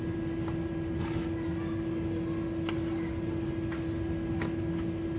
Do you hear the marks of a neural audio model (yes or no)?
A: no